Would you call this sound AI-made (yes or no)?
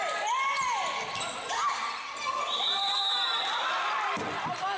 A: no